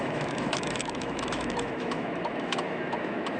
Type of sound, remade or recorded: remade